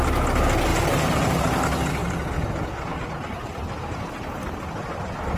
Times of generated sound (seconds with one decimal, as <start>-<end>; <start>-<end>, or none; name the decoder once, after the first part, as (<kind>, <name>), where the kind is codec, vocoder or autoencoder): 0.7-1.6 (vocoder, BigVGAN v2)

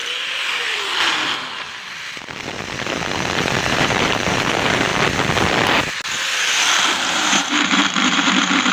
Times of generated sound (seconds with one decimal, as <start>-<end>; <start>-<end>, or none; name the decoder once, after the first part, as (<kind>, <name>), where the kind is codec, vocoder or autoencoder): 3.7-4.9 (vocoder, BigVGAN v2); 7.1-8.7

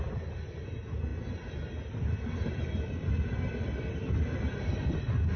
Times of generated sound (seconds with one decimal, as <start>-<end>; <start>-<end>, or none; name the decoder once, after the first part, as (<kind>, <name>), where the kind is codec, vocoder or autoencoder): none